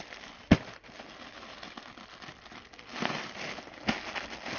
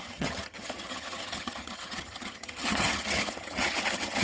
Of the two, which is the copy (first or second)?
second